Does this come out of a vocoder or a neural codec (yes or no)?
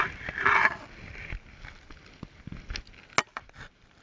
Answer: no